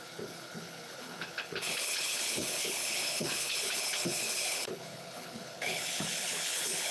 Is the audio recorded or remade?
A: remade